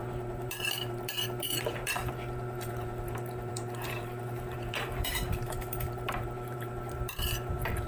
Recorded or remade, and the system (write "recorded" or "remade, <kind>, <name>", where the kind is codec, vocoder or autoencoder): remade, vocoder, BigVGAN v2